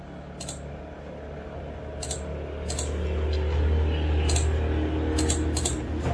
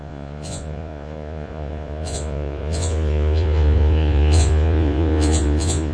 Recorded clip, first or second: first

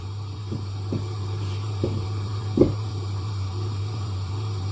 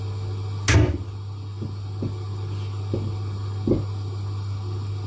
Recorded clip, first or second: second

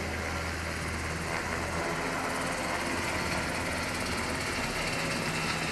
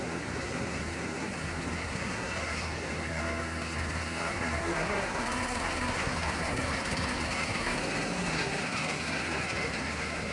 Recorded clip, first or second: first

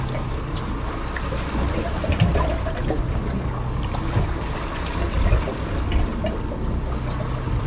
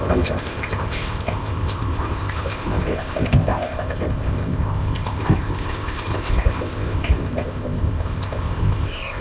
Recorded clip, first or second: first